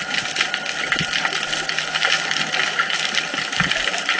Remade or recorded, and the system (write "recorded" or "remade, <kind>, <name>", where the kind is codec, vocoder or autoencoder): recorded